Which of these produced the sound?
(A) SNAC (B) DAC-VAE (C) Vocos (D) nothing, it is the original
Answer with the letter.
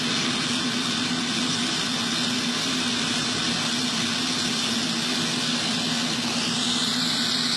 D